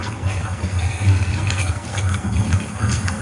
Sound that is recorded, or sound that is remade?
remade